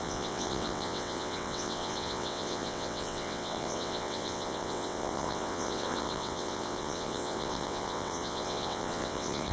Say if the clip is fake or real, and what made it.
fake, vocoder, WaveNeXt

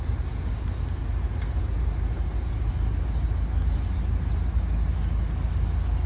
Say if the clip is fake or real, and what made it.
real